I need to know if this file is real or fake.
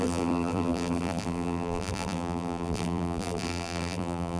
fake